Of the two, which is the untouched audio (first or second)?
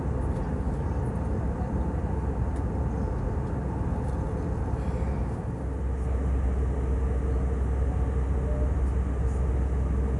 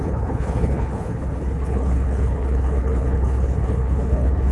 first